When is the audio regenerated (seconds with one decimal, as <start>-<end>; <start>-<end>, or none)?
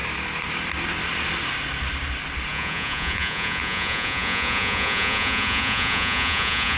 2.5-6.8